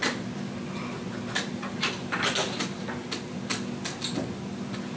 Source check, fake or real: real